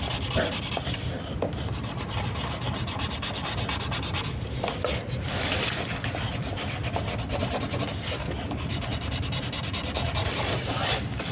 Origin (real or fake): fake